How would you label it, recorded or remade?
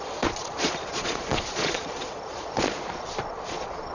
remade